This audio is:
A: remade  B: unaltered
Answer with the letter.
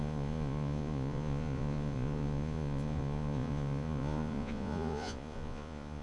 A